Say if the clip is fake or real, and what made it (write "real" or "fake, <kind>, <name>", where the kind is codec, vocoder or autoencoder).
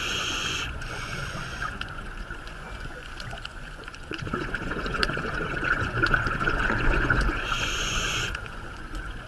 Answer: fake, vocoder, Vocos